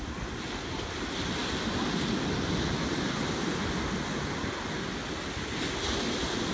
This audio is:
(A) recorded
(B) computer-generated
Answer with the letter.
A